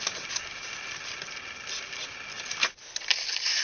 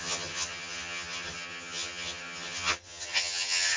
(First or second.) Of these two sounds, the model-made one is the second